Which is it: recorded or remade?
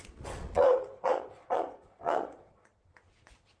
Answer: remade